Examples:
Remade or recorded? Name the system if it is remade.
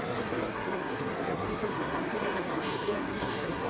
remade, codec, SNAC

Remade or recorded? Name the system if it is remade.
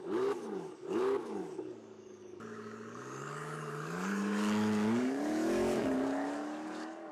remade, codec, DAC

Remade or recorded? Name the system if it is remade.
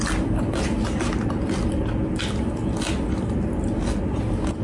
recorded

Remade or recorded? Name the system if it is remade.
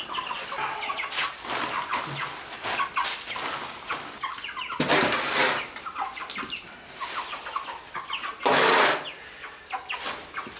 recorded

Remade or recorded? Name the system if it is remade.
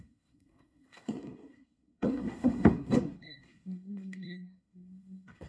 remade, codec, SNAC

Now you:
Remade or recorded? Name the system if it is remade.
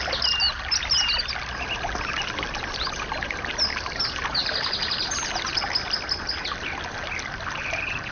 recorded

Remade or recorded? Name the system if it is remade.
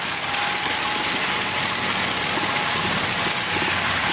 recorded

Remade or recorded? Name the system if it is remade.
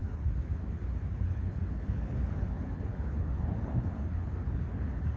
remade, codec, HILCodec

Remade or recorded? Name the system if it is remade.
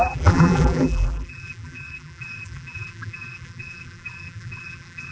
remade, vocoder, BigVGAN v2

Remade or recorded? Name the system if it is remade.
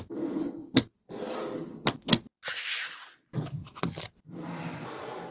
recorded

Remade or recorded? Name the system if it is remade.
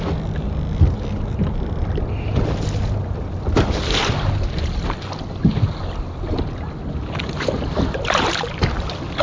recorded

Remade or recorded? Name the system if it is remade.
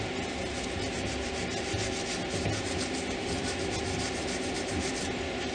recorded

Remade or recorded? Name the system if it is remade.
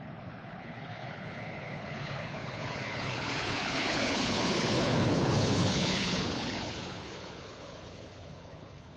remade, codec, HILCodec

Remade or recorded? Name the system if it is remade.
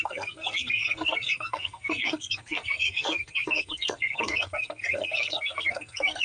remade, codec, SNAC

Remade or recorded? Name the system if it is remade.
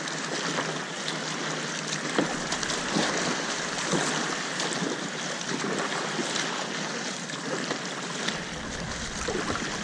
recorded